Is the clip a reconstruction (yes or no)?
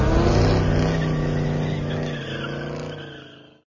no